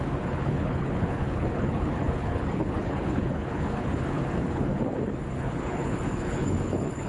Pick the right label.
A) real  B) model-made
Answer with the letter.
B